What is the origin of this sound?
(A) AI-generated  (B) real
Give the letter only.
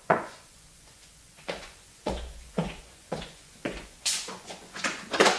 A